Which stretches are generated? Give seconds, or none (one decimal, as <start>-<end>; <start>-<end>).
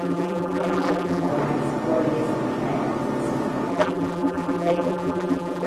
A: 0.0-1.3; 3.7-5.7